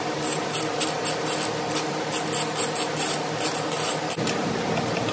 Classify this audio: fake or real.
real